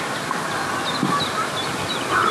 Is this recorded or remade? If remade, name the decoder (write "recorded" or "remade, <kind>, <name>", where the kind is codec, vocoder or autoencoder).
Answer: recorded